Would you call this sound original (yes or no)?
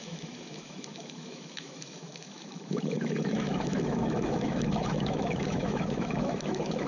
no